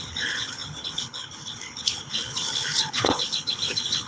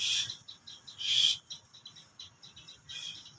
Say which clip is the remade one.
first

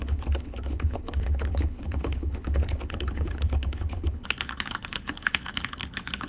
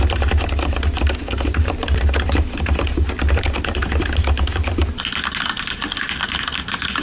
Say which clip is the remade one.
first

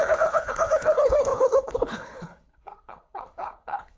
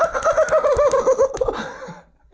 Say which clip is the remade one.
first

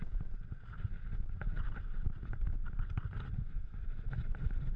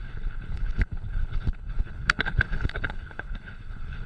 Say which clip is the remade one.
second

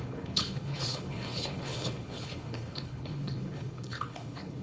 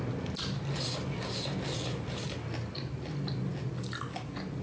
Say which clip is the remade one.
first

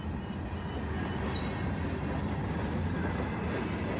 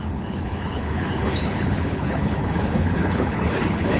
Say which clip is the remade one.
second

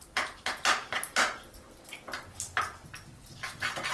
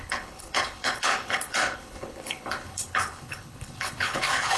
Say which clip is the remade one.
second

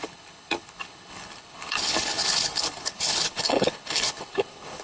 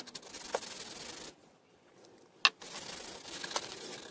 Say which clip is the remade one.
first